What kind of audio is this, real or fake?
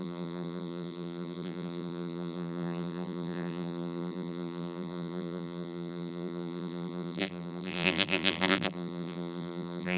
fake